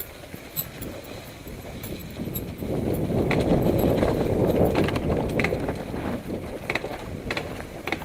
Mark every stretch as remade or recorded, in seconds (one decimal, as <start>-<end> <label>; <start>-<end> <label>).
0.0-8.0 recorded